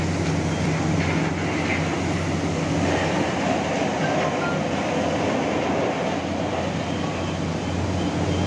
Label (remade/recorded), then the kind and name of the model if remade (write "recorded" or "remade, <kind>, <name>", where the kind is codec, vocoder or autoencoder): recorded